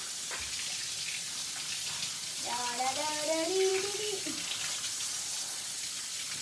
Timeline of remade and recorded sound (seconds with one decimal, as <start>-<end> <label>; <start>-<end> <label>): 0.0-5.3 recorded; 5.3-5.8 remade; 5.8-6.4 recorded